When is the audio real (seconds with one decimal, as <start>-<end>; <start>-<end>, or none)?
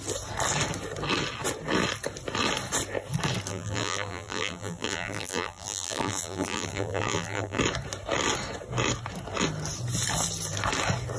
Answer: 0.0-3.5; 7.6-11.2